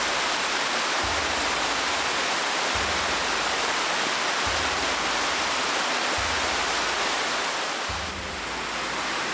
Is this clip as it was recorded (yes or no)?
yes